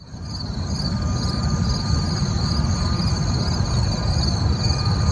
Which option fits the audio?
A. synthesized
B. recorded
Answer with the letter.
B